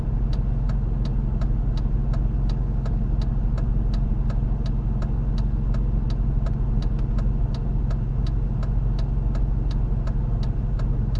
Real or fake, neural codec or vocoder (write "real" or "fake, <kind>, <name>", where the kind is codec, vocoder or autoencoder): real